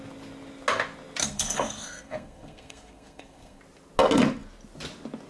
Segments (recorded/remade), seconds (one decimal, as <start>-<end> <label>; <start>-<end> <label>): 0.0-1.2 recorded; 1.2-3.6 remade; 3.6-5.3 recorded